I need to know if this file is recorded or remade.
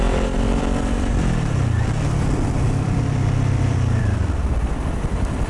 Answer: remade